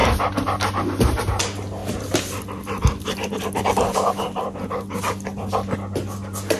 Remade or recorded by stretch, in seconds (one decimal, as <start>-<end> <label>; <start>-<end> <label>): 0.0-1.8 recorded; 1.8-5.0 remade; 5.0-6.6 recorded